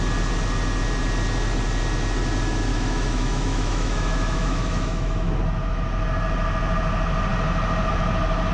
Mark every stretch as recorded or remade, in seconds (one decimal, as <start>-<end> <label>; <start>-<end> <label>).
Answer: 0.0-2.7 recorded; 2.7-5.3 remade; 5.3-8.5 recorded